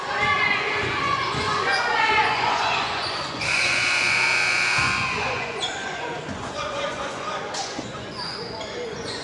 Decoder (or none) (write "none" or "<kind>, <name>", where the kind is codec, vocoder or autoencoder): vocoder, Vocos